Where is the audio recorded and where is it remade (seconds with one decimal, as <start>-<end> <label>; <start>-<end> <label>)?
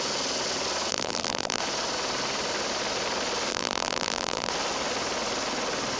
0.0-0.9 recorded; 0.9-1.6 remade; 1.6-3.5 recorded; 3.5-4.5 remade; 4.5-6.0 recorded